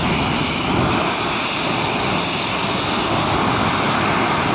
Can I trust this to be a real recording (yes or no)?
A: yes